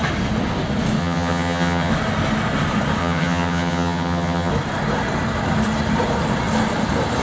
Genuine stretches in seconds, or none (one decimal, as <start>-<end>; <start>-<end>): 0.0-1.0; 1.9-3.0; 4.5-7.2